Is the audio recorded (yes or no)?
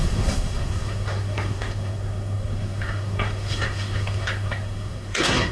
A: no